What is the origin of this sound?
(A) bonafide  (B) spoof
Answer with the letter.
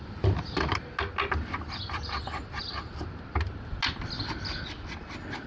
A